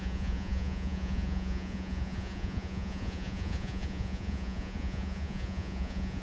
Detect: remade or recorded remade